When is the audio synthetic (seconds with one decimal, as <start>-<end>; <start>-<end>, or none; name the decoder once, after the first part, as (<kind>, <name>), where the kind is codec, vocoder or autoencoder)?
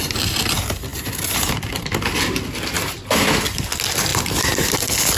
none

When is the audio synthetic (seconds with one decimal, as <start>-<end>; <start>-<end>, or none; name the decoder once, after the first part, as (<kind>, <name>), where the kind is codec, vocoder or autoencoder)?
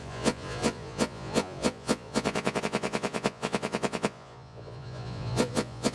0.0-5.9 (vocoder, Vocos)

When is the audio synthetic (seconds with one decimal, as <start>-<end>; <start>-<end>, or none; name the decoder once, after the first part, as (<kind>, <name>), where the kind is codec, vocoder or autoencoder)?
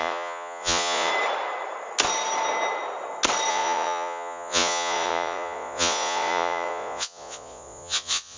0.0-1.1 (vocoder, Vocos); 3.5-8.4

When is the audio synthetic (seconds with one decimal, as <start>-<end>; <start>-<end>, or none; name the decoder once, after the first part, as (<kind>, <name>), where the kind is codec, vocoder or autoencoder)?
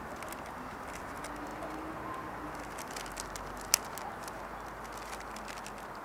none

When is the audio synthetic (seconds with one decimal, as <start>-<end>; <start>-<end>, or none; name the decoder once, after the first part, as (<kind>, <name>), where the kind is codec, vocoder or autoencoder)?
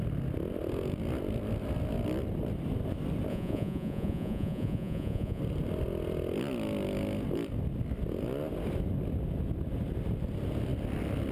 3.3-5.4 (vocoder, Vocos)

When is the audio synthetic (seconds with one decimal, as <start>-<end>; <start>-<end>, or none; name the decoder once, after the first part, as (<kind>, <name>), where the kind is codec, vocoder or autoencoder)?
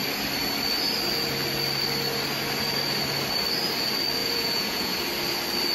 4.2-4.9 (vocoder, Vocos)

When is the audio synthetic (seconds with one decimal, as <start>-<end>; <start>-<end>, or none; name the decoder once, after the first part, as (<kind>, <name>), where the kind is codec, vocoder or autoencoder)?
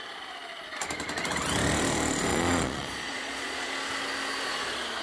2.3-3.7 (vocoder, Vocos)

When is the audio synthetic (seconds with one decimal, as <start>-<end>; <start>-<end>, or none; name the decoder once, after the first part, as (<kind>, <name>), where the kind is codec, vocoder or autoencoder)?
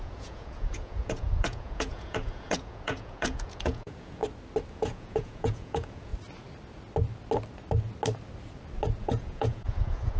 0.0-4.2 (vocoder, Vocos); 4.7-6.1; 9.0-10.2